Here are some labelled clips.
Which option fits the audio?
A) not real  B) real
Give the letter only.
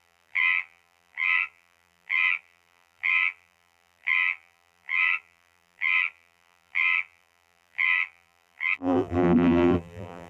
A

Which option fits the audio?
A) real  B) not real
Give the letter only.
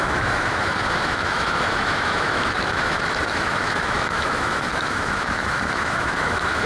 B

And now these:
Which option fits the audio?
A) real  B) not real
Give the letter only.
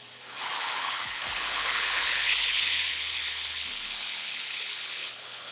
B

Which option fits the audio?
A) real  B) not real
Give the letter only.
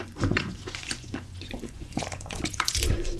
B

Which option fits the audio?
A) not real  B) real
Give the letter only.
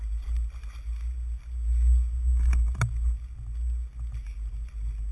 B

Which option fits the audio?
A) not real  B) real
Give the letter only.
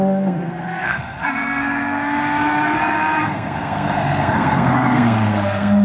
A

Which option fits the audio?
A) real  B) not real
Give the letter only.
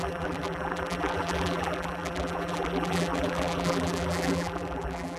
B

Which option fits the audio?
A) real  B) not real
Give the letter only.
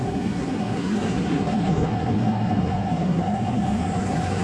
B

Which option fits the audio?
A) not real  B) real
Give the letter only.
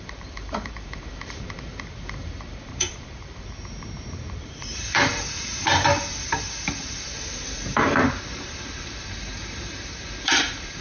A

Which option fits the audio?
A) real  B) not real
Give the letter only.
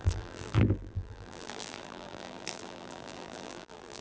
B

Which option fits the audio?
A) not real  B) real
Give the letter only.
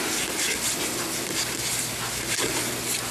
B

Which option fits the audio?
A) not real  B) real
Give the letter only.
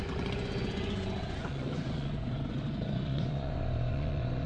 A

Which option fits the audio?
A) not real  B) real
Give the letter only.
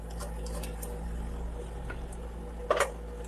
B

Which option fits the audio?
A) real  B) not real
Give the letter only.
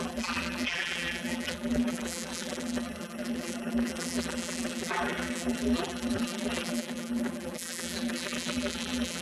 B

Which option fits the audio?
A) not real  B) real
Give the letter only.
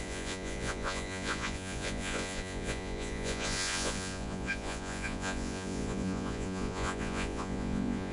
A